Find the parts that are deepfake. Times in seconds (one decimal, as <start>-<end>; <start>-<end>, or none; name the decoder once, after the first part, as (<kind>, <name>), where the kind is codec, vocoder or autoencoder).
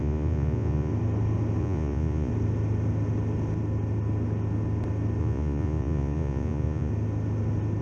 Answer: 0.0-0.9 (vocoder, Vocos); 1.6-2.3; 5.2-6.9